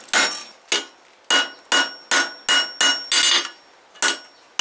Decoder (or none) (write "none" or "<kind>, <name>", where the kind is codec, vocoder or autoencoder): none